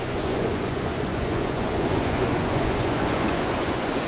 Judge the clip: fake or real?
fake